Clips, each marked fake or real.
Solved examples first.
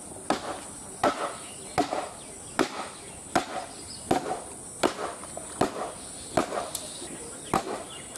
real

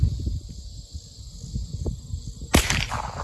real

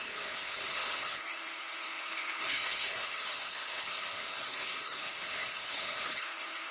fake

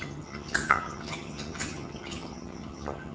fake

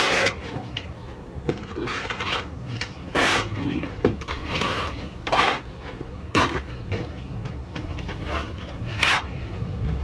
fake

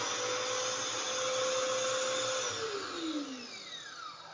real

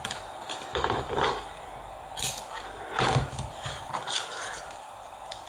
fake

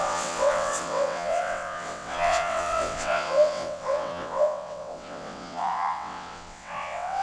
fake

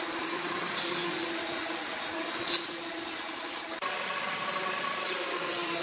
real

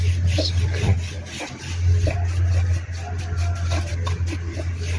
real